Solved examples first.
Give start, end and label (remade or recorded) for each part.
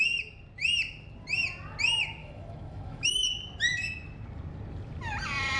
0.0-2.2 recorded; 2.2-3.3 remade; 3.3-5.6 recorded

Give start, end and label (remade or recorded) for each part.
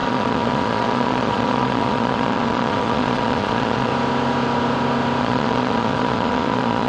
0.0-3.9 remade; 3.9-5.2 recorded; 5.2-6.9 remade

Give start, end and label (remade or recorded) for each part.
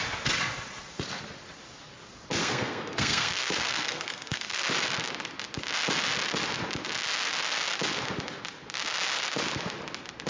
0.0-2.4 recorded; 2.4-4.7 remade; 4.7-10.3 recorded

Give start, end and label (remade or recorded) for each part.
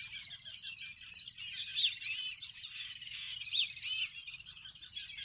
0.0-1.7 recorded; 1.7-4.8 remade; 4.8-5.2 recorded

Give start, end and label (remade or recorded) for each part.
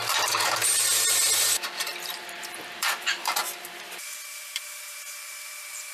0.0-3.4 remade; 3.4-3.9 recorded; 3.9-5.9 remade